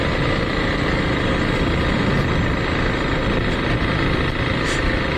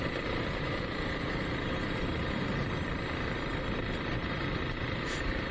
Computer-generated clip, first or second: second